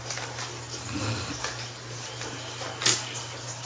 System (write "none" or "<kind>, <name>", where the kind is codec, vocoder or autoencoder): none